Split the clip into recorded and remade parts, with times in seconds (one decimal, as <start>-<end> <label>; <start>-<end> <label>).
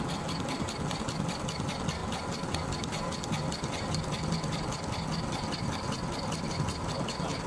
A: 0.0-7.5 recorded